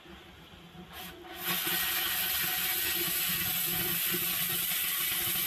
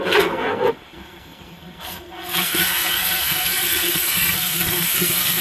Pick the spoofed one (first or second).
second